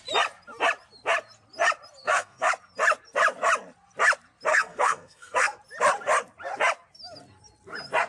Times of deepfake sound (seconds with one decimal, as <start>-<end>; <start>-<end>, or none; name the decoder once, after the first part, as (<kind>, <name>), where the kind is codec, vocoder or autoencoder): 2.0-2.5 (codec, SNAC); 4.5-5.6